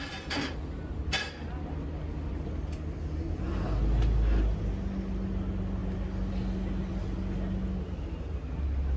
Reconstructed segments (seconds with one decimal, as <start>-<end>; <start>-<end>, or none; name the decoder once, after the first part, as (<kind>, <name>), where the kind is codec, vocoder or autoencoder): none